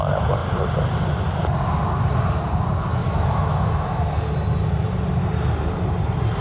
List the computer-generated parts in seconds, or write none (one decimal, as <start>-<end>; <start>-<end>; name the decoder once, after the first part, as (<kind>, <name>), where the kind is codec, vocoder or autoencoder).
3.0-4.0 (autoencoder, DAC-VAE)